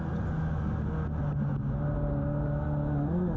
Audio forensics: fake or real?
real